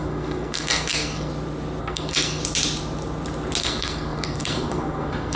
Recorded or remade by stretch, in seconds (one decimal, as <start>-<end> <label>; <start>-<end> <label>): 0.0-1.3 remade; 1.3-1.8 recorded; 1.8-2.4 remade; 2.4-3.6 recorded; 3.6-5.4 remade